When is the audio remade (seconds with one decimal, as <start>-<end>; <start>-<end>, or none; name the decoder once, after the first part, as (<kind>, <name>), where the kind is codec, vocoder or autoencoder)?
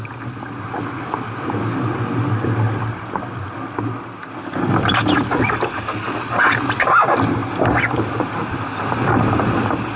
none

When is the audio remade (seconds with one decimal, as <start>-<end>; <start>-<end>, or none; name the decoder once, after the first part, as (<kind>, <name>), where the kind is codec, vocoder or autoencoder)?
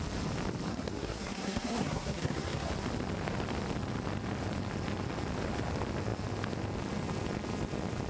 0.7-2.7 (codec, SNAC)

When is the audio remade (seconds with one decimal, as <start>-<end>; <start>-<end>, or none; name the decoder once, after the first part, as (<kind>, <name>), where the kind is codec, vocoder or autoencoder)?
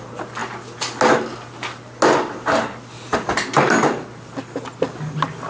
none